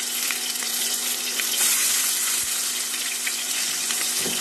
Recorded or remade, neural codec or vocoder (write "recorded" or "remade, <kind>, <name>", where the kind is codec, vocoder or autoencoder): remade, vocoder, Vocos